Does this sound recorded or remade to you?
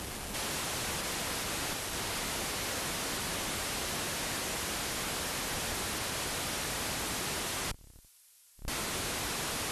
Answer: recorded